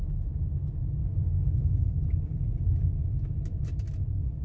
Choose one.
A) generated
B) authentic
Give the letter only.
B